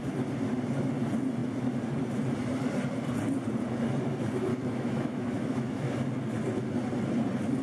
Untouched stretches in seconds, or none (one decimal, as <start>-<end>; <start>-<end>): 0.0-4.5; 5.9-7.6